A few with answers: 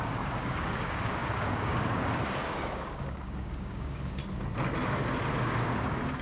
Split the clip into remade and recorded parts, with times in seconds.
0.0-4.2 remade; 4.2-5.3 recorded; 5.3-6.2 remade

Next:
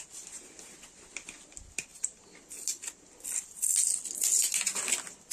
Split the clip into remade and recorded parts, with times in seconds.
0.0-5.3 recorded

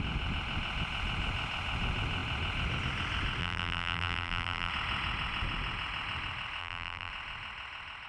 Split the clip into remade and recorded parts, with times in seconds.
0.0-3.4 recorded; 3.4-4.7 remade; 4.7-6.6 recorded; 6.6-7.1 remade; 7.1-8.1 recorded

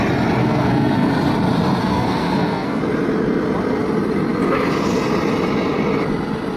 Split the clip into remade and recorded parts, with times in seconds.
0.0-0.4 recorded; 0.4-1.1 remade; 1.1-1.8 recorded; 1.8-2.8 remade; 2.8-6.6 recorded

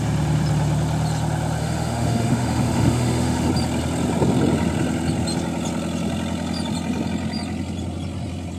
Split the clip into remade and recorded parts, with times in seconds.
0.0-1.6 recorded; 1.6-3.5 remade; 3.5-8.6 recorded

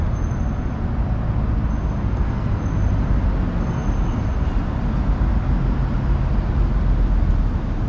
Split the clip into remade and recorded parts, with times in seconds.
0.0-2.1 recorded; 2.1-2.6 remade; 2.6-7.9 recorded

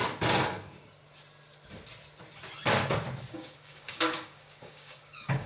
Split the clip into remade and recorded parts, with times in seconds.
0.0-3.3 recorded; 3.3-5.5 remade